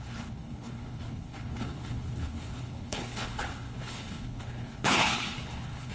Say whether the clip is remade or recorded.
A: remade